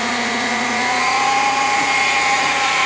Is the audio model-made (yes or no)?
yes